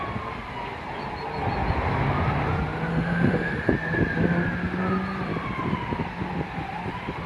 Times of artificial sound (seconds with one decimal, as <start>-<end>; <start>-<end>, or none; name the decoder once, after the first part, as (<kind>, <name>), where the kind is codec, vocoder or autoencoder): 2.9-3.7 (autoencoder, DAC-VAE)